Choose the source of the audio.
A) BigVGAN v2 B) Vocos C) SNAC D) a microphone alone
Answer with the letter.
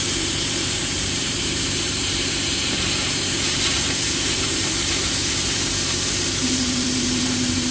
A